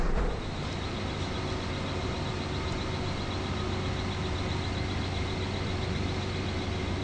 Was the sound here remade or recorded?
recorded